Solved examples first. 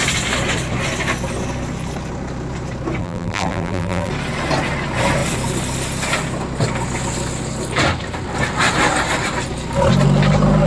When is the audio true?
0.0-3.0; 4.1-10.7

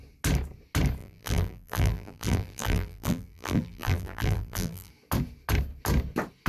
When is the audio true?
0.0-1.0; 4.9-6.5

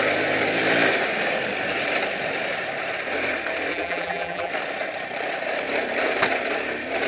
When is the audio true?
0.0-3.7; 4.5-7.1

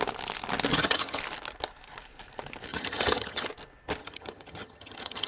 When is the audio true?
0.0-0.7; 1.2-2.7; 3.5-4.0

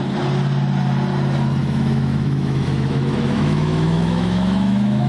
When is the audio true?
0.0-1.6

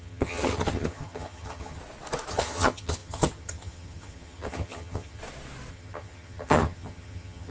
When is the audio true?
1.8-2.3; 5.2-5.7

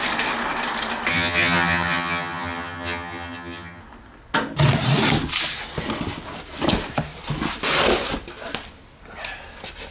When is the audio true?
0.0-1.1; 3.8-9.9